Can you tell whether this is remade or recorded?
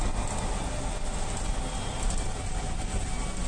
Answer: recorded